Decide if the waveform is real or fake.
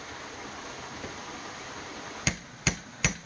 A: real